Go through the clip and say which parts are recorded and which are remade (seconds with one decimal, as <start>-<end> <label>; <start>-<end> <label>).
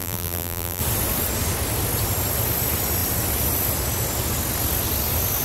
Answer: 0.0-0.8 remade; 0.8-5.4 recorded